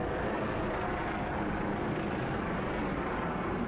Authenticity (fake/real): real